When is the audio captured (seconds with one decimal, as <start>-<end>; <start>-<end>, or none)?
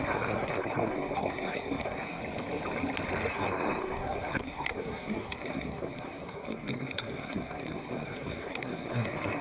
2.2-3.3